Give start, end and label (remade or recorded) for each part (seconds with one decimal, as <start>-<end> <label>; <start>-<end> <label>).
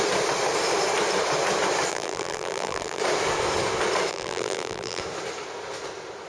0.0-1.9 recorded; 1.9-3.0 remade; 3.0-4.1 recorded; 4.1-5.0 remade; 5.0-6.3 recorded